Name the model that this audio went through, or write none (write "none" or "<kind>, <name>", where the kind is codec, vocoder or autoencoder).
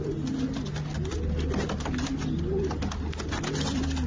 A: none